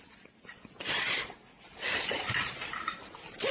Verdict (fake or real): real